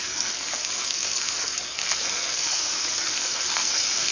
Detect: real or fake fake